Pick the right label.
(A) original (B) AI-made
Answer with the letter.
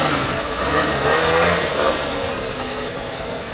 B